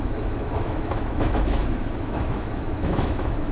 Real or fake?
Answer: fake